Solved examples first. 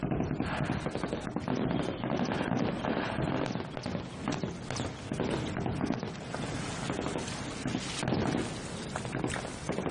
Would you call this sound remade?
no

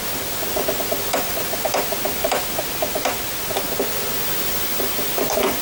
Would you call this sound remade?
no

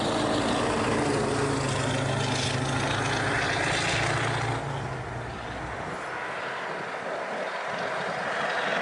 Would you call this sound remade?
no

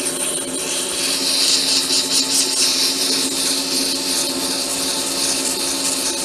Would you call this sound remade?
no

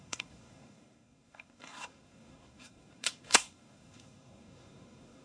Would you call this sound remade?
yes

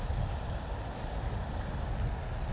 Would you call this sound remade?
no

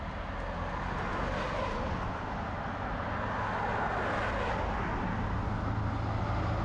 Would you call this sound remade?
no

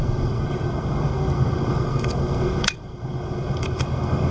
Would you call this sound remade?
yes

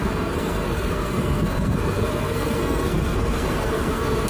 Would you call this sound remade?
yes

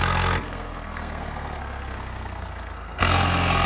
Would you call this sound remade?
yes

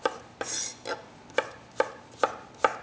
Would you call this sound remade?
no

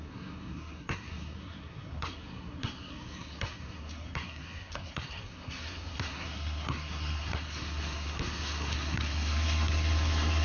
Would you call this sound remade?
yes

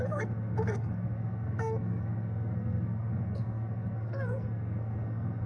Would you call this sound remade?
yes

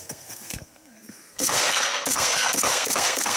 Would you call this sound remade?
yes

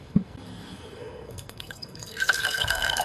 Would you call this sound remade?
yes